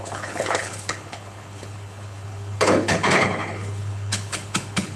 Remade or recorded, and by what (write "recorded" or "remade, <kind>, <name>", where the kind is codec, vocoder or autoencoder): remade, codec, HILCodec